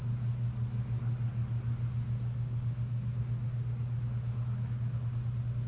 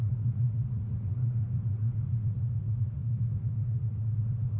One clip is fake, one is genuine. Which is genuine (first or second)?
first